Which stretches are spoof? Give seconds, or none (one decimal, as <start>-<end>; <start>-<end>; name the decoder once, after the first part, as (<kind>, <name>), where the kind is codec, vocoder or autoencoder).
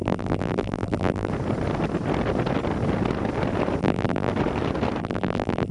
0.0-1.3 (vocoder, BigVGAN v2); 3.8-4.3; 5.0-5.7